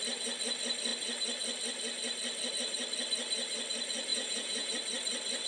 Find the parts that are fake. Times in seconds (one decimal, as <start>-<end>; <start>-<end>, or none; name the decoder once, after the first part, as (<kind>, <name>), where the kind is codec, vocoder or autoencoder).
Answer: 4.1-4.7 (vocoder, Vocos)